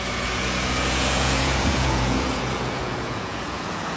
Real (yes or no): no